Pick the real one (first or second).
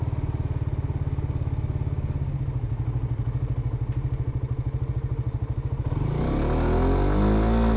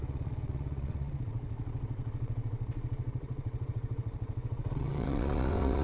first